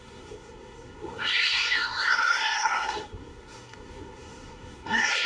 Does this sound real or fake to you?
fake